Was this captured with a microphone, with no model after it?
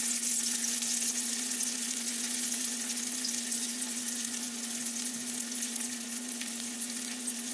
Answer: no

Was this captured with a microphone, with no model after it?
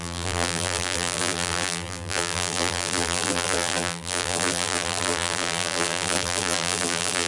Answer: no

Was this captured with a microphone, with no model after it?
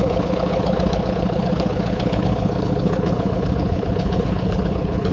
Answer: no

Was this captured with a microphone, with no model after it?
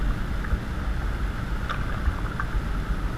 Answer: yes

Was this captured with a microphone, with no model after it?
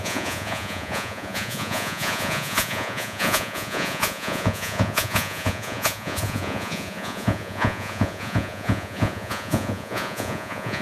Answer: no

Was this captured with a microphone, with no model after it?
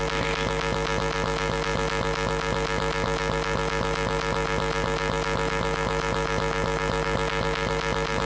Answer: yes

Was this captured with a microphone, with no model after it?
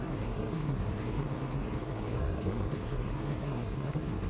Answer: no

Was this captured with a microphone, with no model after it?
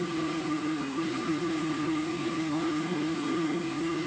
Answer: no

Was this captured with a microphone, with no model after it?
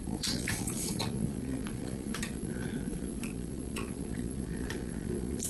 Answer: no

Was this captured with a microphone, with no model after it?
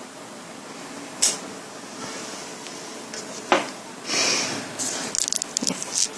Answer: yes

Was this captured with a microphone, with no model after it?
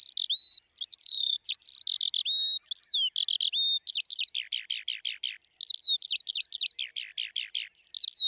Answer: yes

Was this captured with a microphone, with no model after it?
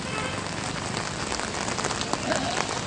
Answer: yes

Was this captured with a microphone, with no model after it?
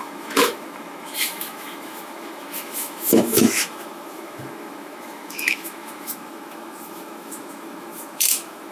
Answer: no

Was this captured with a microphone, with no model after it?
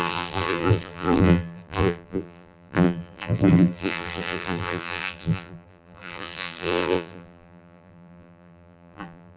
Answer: no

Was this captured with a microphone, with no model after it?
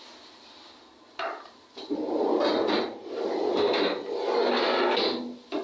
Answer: yes